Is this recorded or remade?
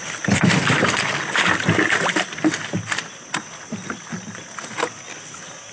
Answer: recorded